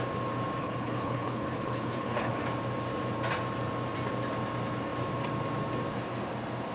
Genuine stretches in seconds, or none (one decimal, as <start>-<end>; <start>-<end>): 0.0-0.6; 2.3-6.7